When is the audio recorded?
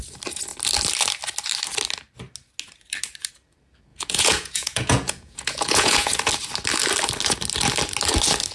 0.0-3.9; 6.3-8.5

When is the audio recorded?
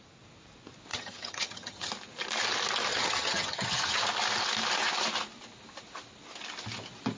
0.0-0.9; 1.9-2.9; 4.0-7.2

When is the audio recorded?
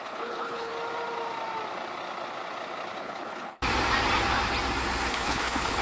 0.7-3.0; 3.6-5.1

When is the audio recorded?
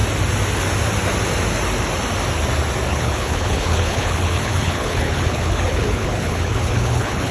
0.0-2.9